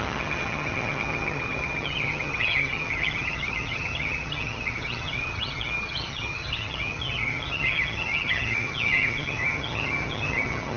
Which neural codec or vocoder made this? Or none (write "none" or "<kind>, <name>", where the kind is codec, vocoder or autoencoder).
vocoder, HiFi-GAN